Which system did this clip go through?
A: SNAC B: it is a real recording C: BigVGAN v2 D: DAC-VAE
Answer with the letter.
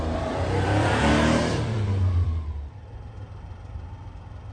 C